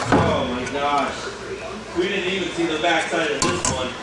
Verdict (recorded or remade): recorded